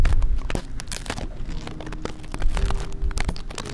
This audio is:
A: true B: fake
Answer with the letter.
A